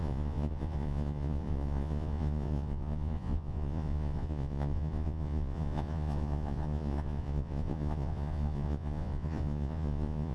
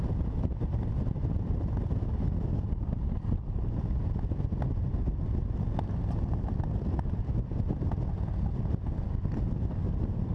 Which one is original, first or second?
second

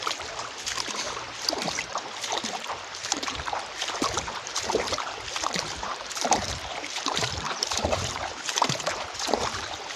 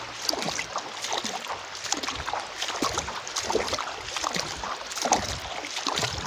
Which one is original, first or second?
second